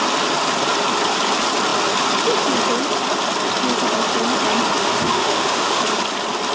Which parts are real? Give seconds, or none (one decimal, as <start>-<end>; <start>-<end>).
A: 0.0-4.8; 5.8-6.5

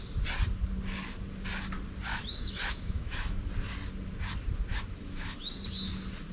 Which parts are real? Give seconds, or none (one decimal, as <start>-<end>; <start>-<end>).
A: 0.0-2.1; 3.4-4.7; 5.6-6.3

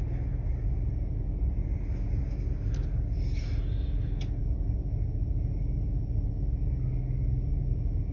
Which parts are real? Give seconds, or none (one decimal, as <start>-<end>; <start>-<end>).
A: 0.0-8.1

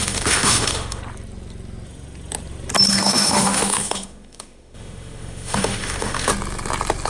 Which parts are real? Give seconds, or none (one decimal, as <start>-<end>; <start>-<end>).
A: 1.0-2.9; 6.3-7.1

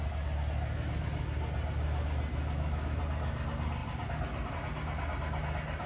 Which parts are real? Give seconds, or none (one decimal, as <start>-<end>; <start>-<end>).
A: 0.0-2.3; 3.0-5.9

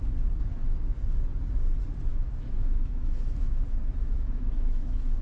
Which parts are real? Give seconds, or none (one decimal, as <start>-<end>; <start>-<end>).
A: 0.0-2.1

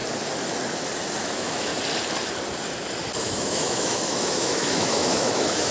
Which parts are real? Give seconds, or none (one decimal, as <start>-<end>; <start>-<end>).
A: 0.0-1.2; 1.7-3.2

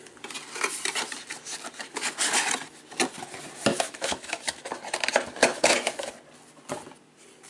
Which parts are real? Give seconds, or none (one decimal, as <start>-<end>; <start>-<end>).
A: 0.0-3.7; 4.7-5.4; 6.1-7.5